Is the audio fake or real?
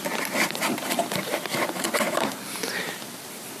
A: fake